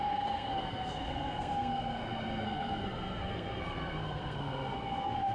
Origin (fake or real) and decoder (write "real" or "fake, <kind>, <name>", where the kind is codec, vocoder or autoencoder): fake, codec, SNAC